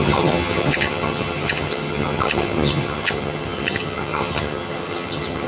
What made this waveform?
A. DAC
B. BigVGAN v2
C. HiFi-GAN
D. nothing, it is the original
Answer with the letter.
C